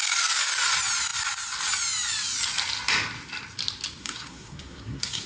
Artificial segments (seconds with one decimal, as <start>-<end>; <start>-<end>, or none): 4.0-5.3

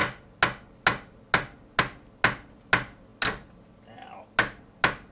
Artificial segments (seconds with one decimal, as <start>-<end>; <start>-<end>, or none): none

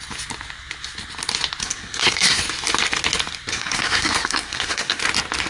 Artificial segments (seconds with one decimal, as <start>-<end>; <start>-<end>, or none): 1.6-2.4; 3.5-5.0

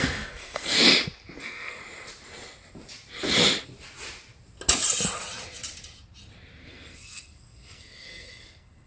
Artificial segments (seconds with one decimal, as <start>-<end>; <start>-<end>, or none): 0.0-0.8; 1.4-1.8; 6.6-8.9

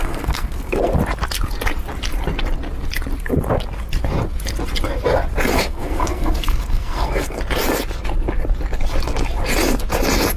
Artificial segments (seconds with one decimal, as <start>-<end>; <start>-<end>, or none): 0.0-0.9; 5.5-7.4

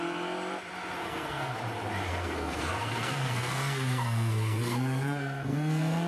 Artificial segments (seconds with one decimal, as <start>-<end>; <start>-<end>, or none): 1.0-1.6; 2.1-6.1